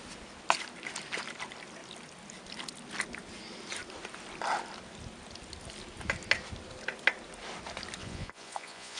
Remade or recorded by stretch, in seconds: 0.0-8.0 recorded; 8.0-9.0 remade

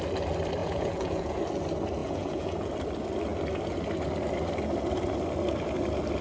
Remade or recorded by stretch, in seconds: 0.0-0.6 recorded; 0.6-1.4 remade; 1.4-2.0 recorded; 2.0-2.7 remade; 2.7-6.2 recorded